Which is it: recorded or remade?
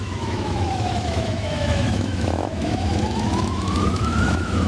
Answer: remade